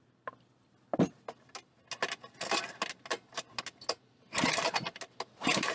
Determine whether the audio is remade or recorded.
recorded